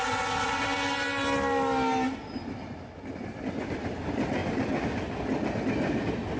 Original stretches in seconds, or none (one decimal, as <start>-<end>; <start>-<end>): 0.0-6.4